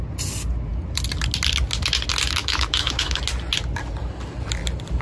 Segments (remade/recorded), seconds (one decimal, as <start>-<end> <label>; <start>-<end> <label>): 0.0-2.4 recorded; 2.4-3.2 remade; 3.2-5.0 recorded